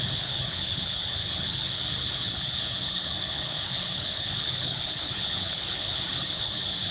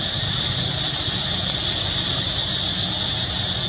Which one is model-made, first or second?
first